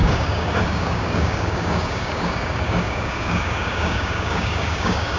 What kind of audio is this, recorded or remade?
remade